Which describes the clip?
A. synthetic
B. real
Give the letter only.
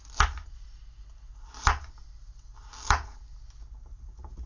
B